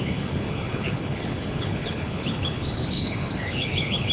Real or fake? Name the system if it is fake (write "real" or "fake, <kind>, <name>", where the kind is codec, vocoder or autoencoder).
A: fake, codec, HILCodec